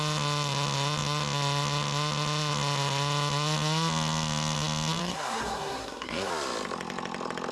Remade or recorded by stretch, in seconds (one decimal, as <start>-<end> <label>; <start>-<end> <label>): 0.0-5.0 recorded; 5.0-6.3 remade; 6.3-7.5 recorded